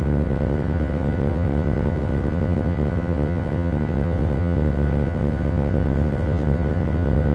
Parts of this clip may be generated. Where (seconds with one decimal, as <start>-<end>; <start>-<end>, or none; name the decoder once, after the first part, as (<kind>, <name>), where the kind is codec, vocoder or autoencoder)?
0.0-7.3 (vocoder, WaveNeXt)